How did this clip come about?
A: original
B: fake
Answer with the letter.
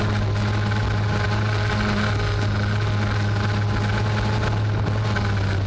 A